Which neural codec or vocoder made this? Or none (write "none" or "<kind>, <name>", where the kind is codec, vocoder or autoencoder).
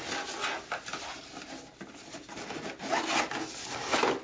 none